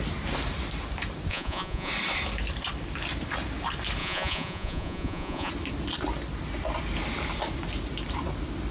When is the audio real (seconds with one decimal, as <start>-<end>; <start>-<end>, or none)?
0.0-1.3; 1.9-4.0; 5.5-8.7